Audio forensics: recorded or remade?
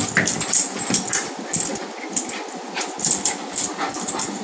recorded